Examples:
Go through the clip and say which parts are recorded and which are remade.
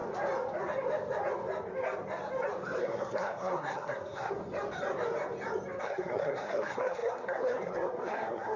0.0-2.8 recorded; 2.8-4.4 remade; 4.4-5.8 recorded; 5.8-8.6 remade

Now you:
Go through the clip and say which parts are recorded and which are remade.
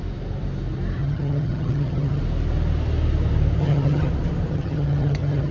0.0-1.0 recorded; 1.0-2.2 remade; 2.2-3.6 recorded; 3.6-4.1 remade; 4.1-4.5 recorded; 4.5-5.5 remade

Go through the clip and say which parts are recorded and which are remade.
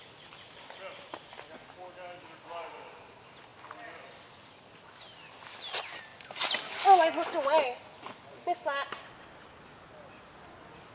0.0-10.9 recorded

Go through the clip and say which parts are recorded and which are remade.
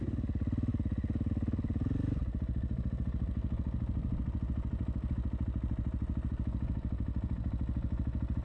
0.0-8.4 recorded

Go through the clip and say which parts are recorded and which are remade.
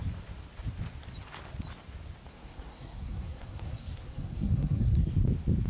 0.0-2.3 recorded; 2.3-5.1 remade; 5.1-5.7 recorded